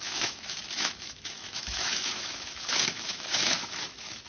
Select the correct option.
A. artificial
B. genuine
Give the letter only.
A